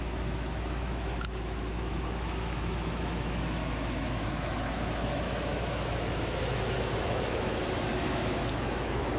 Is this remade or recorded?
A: remade